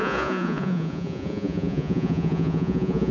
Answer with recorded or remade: remade